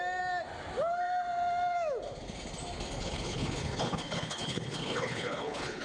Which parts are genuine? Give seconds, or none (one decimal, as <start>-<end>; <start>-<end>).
0.0-3.0

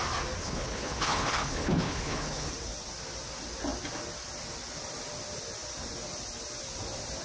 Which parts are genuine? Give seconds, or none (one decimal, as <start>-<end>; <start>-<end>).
0.0-0.4; 2.5-7.2